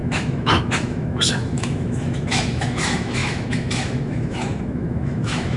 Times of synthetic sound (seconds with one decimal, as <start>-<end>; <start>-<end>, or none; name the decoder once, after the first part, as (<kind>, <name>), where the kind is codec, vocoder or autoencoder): 0.0-5.6 (autoencoder, DAC-VAE)